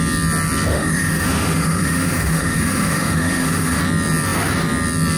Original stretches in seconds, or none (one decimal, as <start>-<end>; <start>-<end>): 0.0-0.7; 3.8-5.2